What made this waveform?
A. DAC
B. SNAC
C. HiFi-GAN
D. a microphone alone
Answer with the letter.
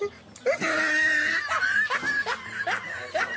D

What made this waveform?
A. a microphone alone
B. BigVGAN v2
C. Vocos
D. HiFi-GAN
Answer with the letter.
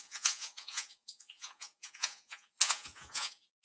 C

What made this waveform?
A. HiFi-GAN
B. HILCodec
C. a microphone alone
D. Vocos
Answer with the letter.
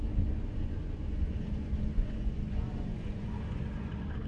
D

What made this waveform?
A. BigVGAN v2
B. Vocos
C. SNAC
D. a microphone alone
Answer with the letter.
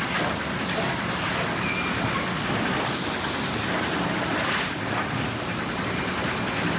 D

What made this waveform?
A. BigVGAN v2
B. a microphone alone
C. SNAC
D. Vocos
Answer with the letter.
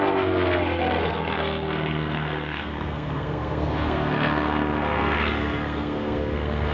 C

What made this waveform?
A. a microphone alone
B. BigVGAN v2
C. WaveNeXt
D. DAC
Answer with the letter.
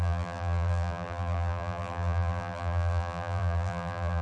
B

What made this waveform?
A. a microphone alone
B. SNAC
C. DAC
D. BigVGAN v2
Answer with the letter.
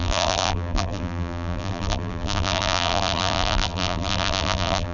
D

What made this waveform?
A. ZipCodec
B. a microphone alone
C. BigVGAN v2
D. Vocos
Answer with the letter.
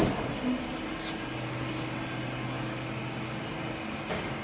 B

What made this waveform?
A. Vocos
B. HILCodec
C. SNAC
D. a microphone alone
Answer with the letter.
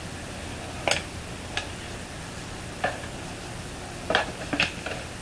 D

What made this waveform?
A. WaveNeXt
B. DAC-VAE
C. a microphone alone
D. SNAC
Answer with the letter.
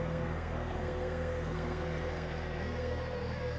D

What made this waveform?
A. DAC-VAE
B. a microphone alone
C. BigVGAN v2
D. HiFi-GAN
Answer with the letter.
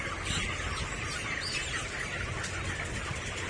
B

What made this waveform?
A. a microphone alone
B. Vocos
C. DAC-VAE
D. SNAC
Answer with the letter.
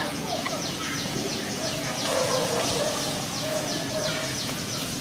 B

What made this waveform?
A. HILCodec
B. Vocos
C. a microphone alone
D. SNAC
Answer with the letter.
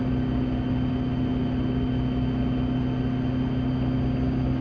C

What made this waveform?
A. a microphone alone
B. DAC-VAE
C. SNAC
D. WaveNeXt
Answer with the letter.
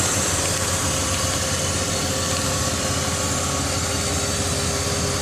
A